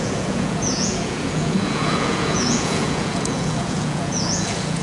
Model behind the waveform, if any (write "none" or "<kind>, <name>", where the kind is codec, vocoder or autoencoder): vocoder, Vocos